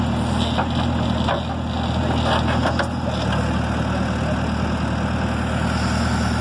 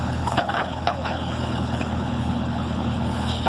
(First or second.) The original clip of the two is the first